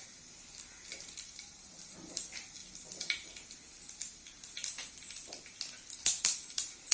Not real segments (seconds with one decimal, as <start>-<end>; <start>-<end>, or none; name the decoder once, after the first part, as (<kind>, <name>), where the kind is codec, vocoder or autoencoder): 0.9-2.2 (vocoder, BigVGAN v2)